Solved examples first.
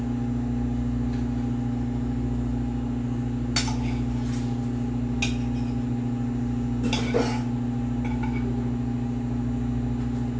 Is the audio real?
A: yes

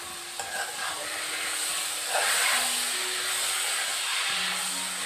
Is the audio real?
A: yes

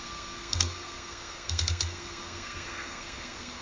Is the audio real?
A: no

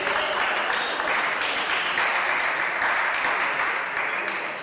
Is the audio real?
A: yes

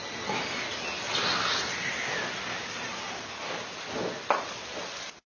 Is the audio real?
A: yes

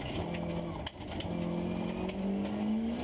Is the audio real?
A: yes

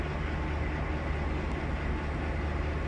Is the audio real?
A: yes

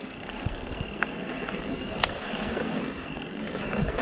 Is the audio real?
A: no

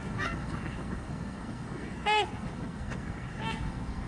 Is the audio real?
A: no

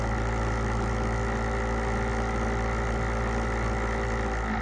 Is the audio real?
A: yes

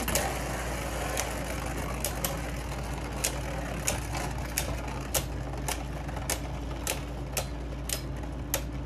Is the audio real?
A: yes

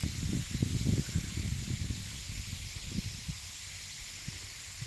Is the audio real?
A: yes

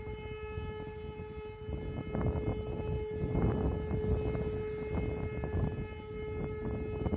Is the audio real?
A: yes